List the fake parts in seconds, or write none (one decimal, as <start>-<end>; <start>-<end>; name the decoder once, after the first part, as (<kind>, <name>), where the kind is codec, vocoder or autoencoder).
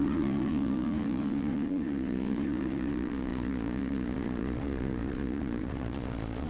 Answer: 0.0-6.5 (vocoder, Vocos)